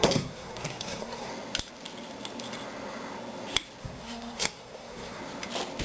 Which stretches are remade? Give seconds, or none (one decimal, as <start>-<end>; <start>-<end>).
0.0-1.3; 3.8-5.2